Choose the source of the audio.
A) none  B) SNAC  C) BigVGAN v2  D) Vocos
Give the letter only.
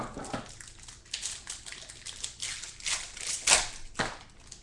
A